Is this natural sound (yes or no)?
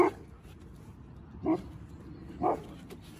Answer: yes